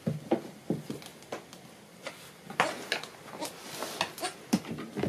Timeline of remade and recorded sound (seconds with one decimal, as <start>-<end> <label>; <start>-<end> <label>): 0.0-5.1 recorded